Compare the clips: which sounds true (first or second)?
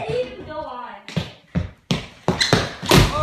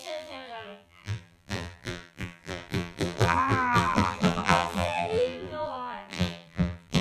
first